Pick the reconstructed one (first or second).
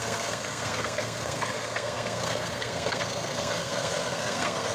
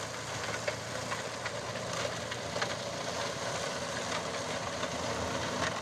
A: first